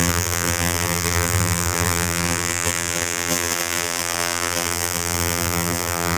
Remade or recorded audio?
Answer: remade